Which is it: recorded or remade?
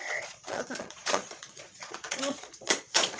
remade